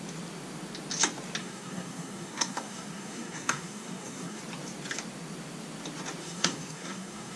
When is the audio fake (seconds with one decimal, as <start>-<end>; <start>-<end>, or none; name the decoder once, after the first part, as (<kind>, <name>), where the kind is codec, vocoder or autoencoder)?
1.4-4.4 (codec, SNAC); 6.2-7.4